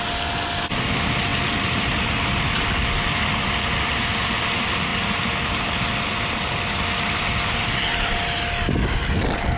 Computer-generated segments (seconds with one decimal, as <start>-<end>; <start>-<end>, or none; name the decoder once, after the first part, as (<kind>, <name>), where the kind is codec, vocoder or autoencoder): none